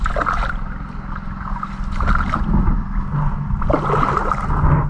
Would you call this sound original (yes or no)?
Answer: yes